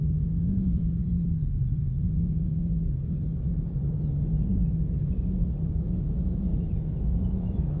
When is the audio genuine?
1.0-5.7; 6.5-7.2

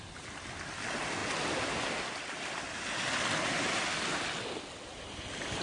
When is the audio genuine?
0.0-5.6

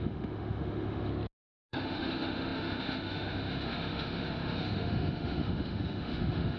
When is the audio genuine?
1.1-1.7

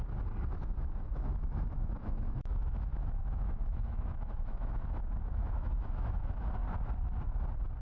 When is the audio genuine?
0.0-0.5; 6.6-7.8

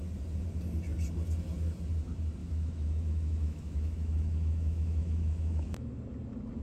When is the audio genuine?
0.0-2.4; 5.9-6.6

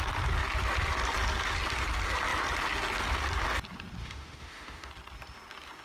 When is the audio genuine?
0.0-4.0; 4.9-5.8